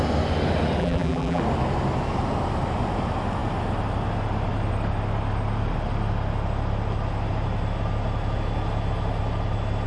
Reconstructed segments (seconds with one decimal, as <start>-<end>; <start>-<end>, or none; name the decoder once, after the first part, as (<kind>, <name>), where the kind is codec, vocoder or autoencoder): 0.8-1.4 (vocoder, BigVGAN v2)